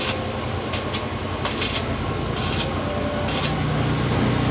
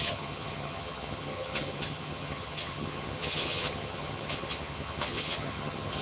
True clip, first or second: first